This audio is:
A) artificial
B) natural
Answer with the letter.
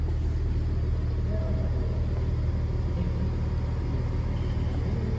B